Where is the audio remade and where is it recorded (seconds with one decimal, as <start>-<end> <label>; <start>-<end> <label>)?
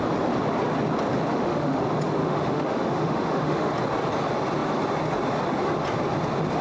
0.0-1.3 recorded; 1.3-1.8 remade; 1.8-2.2 recorded; 2.2-3.7 remade; 3.7-6.6 recorded